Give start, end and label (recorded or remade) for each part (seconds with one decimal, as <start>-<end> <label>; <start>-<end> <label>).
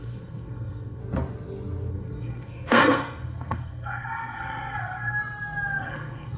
0.0-1.0 remade; 1.0-1.9 recorded; 1.9-5.2 remade; 5.2-5.8 recorded; 5.8-6.4 remade